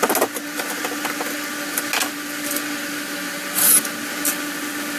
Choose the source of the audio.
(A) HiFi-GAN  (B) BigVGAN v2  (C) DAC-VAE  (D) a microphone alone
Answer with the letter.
D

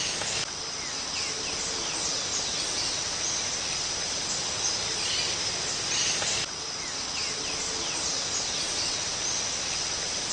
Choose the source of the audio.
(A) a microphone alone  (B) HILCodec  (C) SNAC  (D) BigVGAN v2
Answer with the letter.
A